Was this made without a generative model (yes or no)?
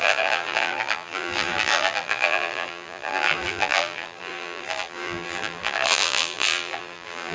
no